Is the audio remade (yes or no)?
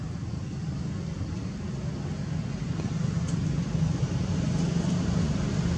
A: no